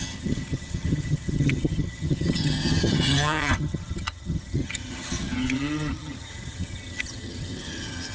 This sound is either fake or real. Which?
fake